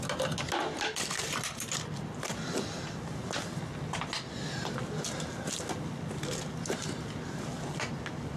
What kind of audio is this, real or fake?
real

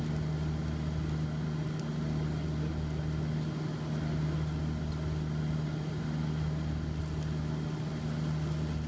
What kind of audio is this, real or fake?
real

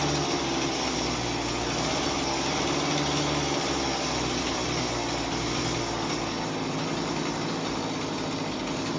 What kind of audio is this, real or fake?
real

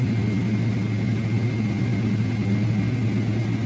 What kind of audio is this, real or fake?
real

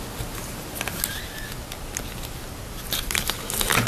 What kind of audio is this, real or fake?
real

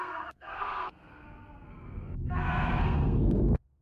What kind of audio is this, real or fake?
fake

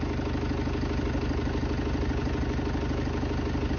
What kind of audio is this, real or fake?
real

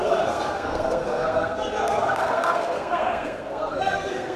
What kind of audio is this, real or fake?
fake